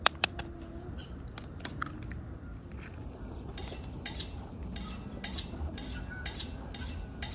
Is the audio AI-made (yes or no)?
no